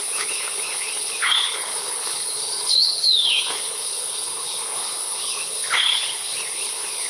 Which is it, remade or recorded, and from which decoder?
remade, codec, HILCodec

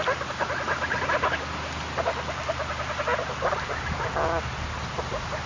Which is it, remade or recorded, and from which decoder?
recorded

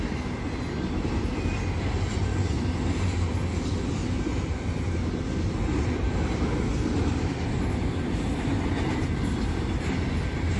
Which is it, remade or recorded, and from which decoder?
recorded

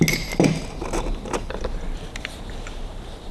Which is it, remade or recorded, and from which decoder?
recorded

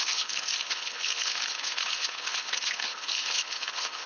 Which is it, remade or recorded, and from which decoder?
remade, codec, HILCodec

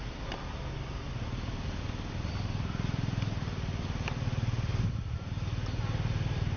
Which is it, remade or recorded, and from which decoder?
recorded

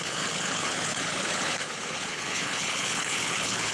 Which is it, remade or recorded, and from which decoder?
remade, codec, HILCodec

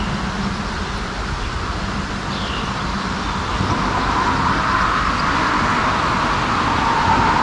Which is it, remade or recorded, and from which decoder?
recorded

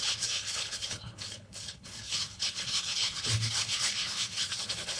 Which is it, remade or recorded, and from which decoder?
remade, codec, HILCodec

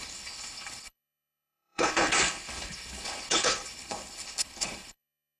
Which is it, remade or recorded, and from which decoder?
remade, codec, HILCodec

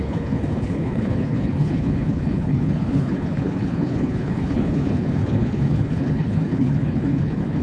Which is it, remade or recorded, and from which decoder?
remade, codec, HILCodec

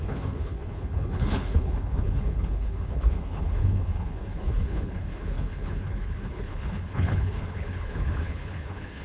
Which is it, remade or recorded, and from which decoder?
remade, codec, HILCodec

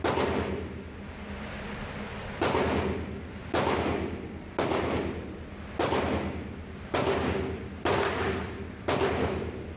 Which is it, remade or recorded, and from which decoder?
recorded